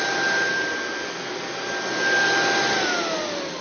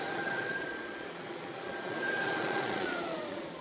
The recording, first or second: first